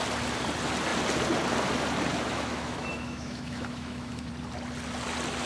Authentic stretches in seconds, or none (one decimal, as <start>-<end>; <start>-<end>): 0.0-2.1; 4.3-5.5